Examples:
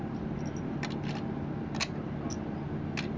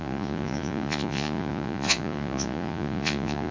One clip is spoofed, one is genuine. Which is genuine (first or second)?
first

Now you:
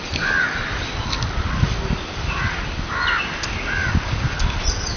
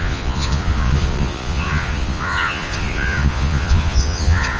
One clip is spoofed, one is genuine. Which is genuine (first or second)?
first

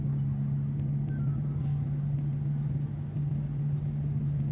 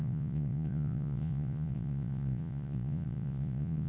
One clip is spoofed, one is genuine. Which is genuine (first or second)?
first